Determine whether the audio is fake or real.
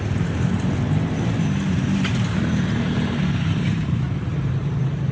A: fake